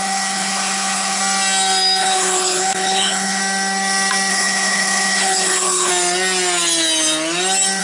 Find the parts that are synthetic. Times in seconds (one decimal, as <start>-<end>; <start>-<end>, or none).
0.0-1.2; 2.0-3.4; 4.3-5.9